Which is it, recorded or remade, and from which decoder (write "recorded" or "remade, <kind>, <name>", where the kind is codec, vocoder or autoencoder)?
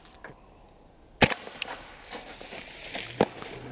recorded